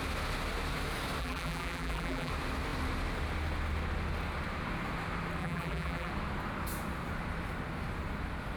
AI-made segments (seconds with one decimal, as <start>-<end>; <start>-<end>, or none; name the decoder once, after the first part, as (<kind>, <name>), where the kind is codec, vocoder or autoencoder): 1.2-2.3 (vocoder, BigVGAN v2); 5.4-6.1